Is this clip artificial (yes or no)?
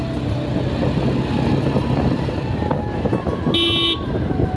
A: no